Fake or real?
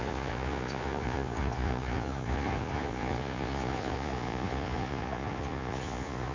fake